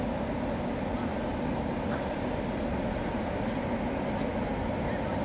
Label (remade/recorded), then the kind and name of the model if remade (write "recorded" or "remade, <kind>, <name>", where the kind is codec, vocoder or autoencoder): recorded